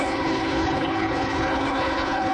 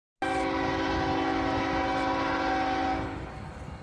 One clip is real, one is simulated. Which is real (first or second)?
second